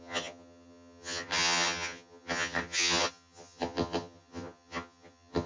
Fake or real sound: fake